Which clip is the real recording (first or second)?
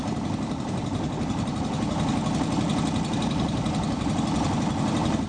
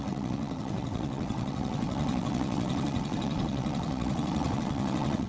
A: first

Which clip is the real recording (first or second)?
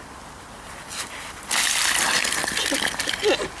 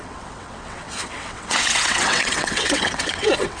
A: first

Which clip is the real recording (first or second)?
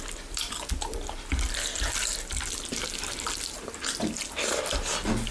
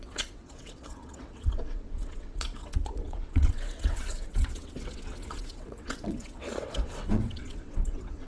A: first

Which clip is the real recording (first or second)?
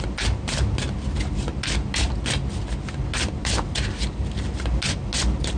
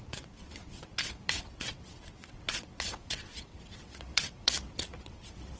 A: first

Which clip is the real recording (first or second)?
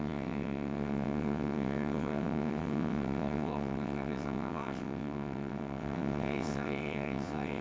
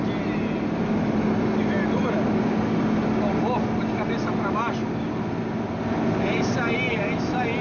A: second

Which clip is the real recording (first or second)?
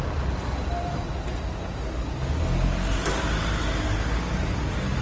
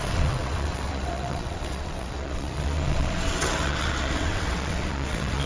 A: first